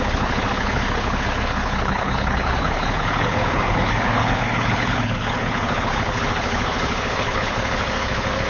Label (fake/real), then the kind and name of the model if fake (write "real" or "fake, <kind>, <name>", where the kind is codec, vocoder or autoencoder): fake, codec, HILCodec